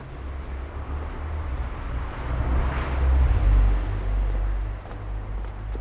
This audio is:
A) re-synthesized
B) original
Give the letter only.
B